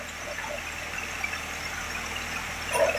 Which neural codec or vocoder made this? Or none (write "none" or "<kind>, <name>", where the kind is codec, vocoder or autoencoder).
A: none